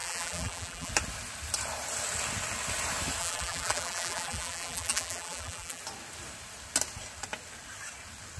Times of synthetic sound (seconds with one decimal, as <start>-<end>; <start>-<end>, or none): 0.0-0.9; 3.2-5.8